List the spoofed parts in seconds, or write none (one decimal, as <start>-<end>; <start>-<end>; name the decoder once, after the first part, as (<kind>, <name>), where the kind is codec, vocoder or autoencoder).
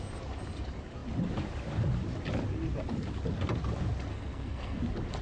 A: 4.1-4.8 (codec, SNAC)